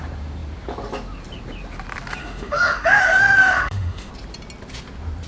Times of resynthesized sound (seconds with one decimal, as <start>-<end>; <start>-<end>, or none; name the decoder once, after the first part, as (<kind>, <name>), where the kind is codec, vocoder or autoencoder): 2.2-4.1 (autoencoder, DAC-VAE)